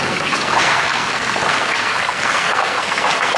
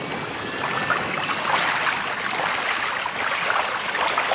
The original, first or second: second